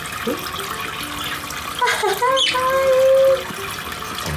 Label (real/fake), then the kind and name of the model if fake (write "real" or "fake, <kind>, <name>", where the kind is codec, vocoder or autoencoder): real